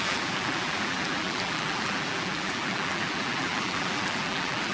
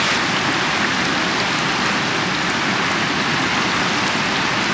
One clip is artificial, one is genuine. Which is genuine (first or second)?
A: second